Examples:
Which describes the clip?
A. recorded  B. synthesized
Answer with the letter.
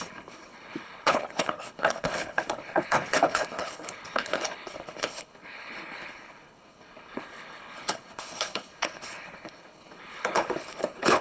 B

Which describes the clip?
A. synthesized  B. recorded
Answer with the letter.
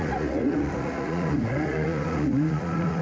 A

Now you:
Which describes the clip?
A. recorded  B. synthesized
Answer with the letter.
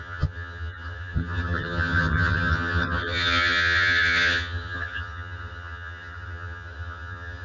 B